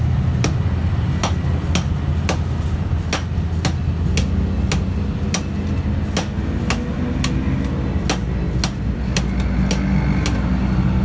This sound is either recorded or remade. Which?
recorded